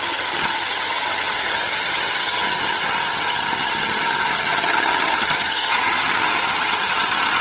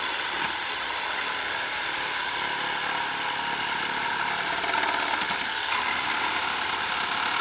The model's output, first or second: first